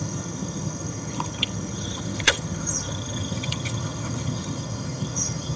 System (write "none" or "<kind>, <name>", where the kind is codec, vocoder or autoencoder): vocoder, HiFi-GAN